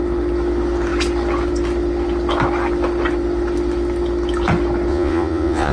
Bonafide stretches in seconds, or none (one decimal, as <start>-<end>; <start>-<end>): 0.0-4.9